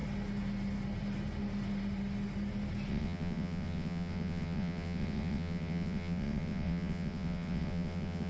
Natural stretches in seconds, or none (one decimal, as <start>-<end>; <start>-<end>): 0.0-2.9